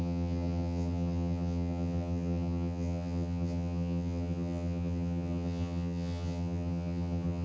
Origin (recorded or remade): remade